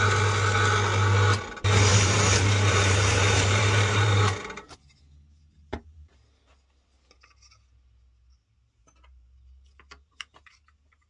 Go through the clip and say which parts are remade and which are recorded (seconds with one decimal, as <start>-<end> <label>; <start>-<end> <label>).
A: 0.0-1.9 recorded; 1.9-4.2 remade; 4.2-11.1 recorded